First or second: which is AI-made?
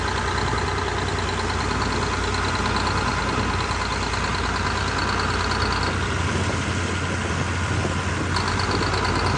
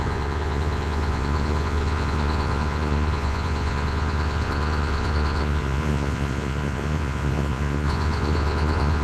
second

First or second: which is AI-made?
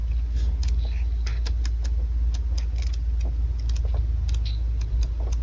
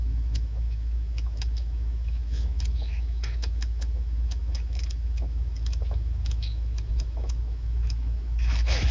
second